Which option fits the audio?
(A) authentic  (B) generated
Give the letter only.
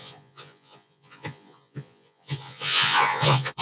B